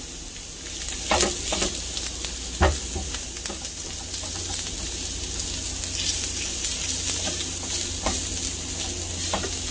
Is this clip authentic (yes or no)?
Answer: yes